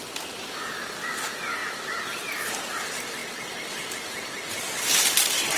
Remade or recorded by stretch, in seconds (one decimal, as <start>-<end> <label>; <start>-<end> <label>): 0.0-1.6 recorded; 1.6-2.5 remade; 2.5-5.6 recorded